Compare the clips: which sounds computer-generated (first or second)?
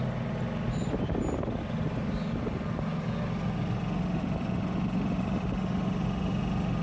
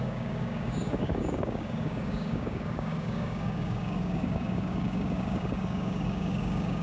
second